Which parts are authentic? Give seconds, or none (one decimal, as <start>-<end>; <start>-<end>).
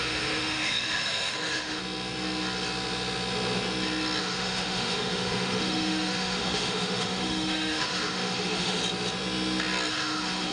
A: 1.8-4.2; 8.8-9.9